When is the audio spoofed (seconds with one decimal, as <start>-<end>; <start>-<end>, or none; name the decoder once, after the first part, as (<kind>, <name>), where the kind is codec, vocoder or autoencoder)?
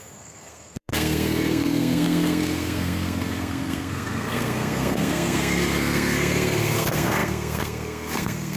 0.0-8.6 (codec, SNAC)